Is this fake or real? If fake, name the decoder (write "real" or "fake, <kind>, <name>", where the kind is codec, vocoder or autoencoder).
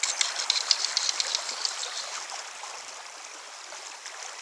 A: real